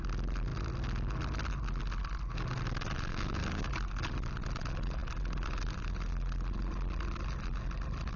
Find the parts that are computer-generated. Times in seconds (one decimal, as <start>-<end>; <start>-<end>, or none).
3.1-3.7